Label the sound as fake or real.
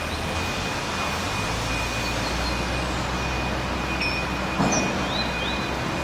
real